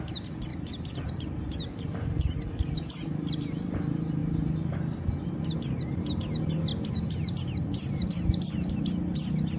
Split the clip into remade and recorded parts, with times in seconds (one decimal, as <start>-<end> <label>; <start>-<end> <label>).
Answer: 0.0-9.6 recorded